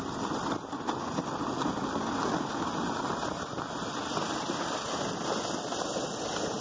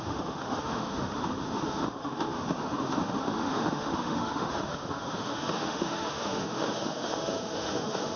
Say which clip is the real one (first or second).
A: first